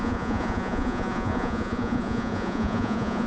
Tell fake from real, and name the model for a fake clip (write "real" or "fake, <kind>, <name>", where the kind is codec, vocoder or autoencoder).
fake, vocoder, Vocos